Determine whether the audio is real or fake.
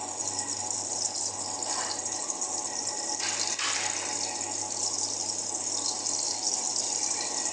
real